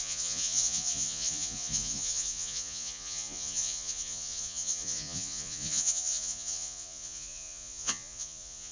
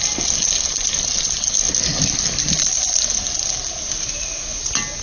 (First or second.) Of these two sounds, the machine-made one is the first